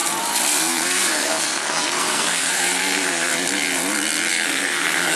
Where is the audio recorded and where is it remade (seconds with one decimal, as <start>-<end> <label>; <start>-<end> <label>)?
0.0-0.6 recorded; 0.6-3.3 remade; 3.3-4.3 recorded; 4.3-5.2 remade